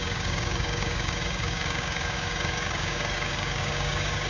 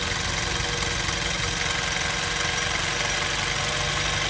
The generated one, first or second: first